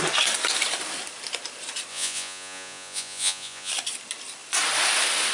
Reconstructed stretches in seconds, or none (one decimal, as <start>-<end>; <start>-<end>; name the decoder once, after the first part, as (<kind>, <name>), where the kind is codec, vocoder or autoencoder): 1.9-3.7 (vocoder, Vocos)